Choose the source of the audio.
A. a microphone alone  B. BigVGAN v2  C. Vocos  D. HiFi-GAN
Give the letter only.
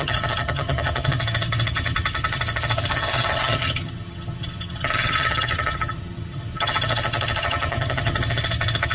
D